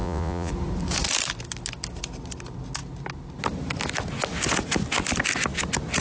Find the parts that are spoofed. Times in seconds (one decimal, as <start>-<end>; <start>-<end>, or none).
0.0-0.5